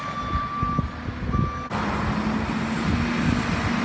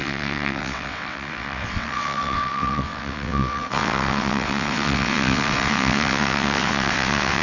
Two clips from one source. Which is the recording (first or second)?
first